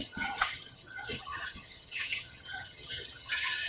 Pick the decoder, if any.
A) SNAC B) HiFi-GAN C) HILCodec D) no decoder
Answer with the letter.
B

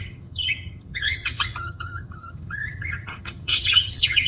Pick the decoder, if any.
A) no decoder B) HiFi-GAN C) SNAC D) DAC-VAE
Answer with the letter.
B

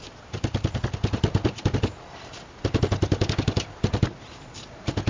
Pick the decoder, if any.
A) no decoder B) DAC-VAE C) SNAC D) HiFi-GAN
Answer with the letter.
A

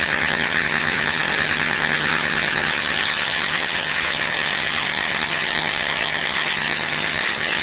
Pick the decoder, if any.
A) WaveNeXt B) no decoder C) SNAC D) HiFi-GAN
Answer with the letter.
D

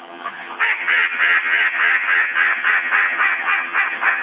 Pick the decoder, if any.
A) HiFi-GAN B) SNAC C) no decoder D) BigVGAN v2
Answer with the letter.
A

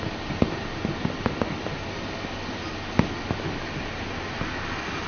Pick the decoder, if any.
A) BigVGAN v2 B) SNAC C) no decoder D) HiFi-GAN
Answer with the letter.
C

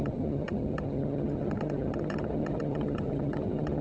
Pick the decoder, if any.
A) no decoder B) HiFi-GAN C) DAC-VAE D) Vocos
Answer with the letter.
B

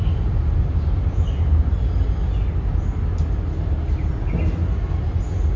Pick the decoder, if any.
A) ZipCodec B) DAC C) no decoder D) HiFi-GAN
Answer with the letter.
C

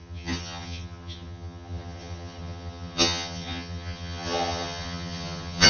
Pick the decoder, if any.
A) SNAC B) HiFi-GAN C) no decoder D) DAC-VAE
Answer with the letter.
B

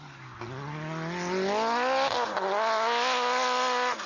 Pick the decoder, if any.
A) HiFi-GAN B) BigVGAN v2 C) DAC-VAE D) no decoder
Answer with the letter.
D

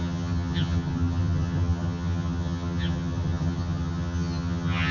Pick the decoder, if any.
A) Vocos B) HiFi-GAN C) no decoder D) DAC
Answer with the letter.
B